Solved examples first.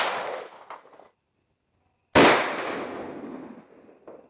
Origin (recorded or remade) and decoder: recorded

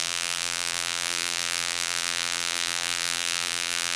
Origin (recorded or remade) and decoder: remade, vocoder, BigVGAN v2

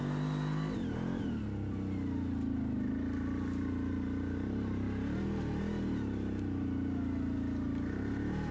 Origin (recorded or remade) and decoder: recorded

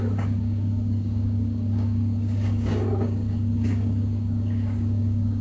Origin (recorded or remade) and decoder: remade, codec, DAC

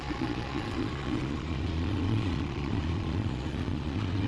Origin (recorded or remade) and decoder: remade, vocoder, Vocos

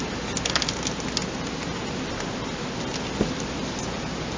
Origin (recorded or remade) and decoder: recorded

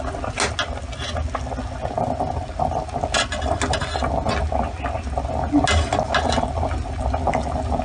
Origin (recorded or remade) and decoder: recorded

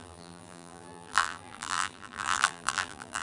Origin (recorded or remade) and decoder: remade, vocoder, BigVGAN v2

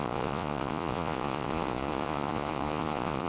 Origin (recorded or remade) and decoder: remade, vocoder, Vocos